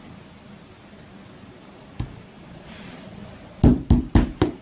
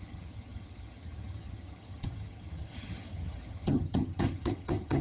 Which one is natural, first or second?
first